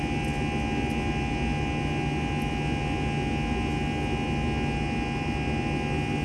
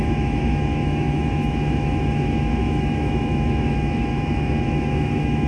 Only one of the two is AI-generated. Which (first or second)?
second